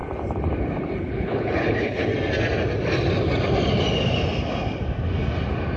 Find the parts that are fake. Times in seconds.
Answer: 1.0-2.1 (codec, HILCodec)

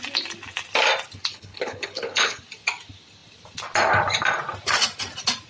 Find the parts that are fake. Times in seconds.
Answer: 1.3-2.4 (codec, HILCodec)